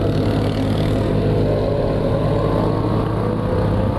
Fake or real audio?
real